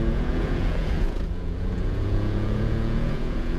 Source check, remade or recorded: remade